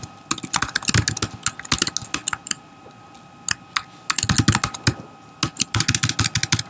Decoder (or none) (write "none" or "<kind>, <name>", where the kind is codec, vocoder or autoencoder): none